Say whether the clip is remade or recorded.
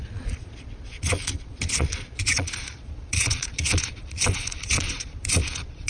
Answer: remade